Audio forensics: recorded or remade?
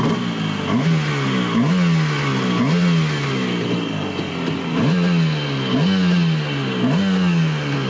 recorded